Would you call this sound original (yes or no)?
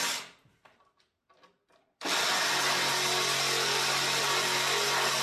yes